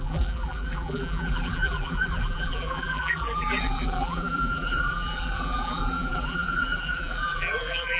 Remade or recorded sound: remade